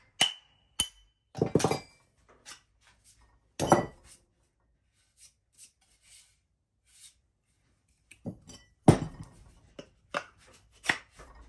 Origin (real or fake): real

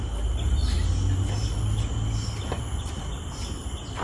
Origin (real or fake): real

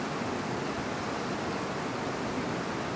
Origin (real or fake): real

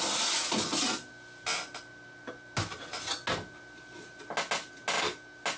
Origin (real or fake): real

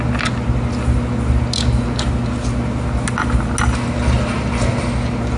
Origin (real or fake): real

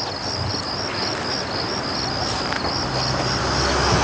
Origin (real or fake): real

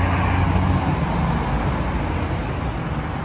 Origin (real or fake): real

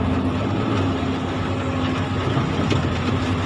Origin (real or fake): real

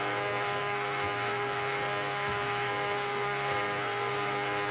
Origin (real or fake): fake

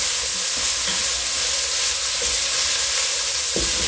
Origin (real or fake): real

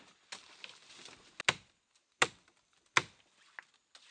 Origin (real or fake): real